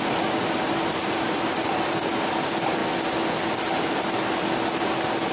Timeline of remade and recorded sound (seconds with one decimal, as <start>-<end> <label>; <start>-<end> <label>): 0.0-5.3 recorded